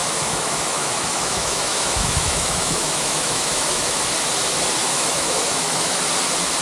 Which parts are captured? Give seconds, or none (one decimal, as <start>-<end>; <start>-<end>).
4.0-4.8; 6.0-6.6